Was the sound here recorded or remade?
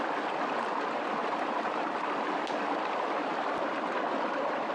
recorded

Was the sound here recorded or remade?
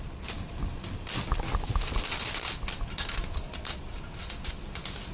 recorded